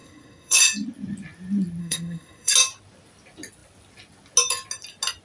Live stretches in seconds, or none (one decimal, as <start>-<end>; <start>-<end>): 0.6-1.8; 2.5-5.2